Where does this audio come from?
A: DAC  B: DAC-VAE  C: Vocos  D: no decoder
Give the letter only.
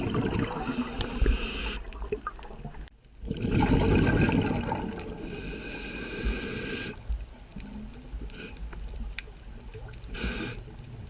D